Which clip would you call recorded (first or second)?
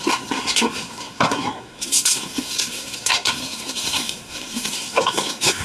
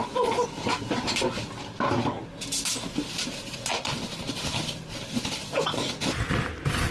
second